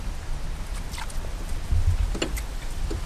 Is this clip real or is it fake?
real